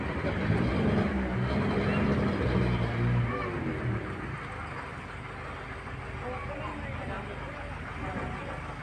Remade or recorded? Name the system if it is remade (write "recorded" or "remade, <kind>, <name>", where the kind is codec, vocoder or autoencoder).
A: recorded